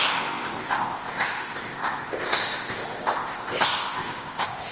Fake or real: fake